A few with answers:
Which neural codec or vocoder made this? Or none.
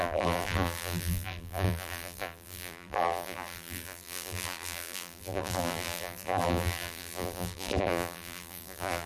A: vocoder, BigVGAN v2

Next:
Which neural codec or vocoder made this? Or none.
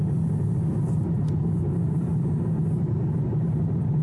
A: none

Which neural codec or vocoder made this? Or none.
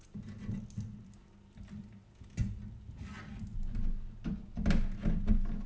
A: none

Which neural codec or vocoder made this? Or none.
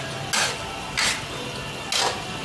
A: none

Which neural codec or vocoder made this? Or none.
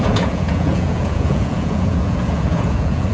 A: vocoder, Vocos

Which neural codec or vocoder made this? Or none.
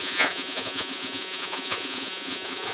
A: vocoder, Vocos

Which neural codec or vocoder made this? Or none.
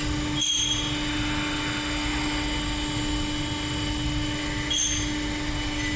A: none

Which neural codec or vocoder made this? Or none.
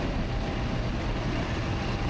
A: none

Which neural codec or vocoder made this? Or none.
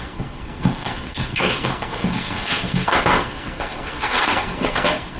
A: codec, SNAC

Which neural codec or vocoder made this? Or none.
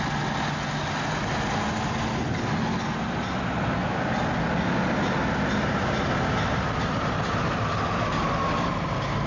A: none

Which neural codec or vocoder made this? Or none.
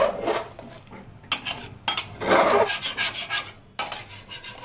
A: none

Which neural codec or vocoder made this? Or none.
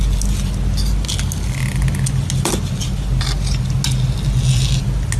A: none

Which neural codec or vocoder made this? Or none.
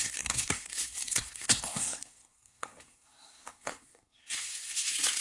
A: codec, SNAC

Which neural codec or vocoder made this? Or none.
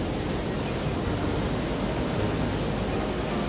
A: none